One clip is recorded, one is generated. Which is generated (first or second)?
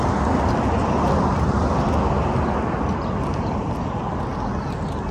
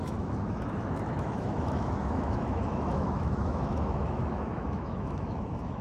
second